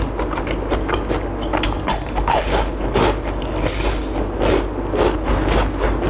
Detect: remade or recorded recorded